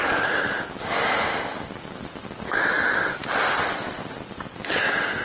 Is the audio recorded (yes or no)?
yes